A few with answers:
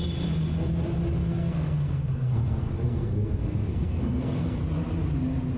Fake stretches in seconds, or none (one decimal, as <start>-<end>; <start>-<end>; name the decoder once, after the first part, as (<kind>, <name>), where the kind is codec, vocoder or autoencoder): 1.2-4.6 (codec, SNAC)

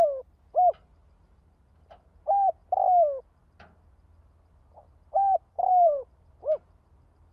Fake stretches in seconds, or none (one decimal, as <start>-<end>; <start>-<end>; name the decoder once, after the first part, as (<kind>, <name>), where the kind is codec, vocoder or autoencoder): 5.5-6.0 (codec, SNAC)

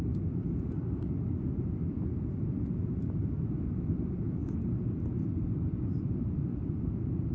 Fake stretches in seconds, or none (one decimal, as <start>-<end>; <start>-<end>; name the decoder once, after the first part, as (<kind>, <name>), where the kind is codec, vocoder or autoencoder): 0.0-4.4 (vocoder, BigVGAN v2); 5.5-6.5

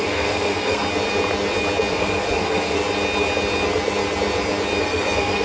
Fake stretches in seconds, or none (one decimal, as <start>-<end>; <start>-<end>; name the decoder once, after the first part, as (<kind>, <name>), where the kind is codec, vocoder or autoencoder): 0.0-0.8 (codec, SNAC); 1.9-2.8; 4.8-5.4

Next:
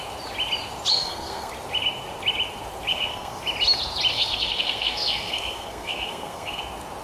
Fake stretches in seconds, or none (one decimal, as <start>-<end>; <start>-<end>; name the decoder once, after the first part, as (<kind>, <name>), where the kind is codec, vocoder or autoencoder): 0.9-1.5 (codec, SNAC); 2.9-3.4; 4.1-6.6